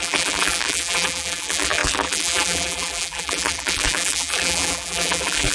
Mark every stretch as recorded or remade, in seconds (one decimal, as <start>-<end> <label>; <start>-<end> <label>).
0.0-5.5 remade